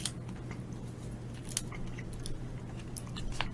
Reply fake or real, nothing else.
real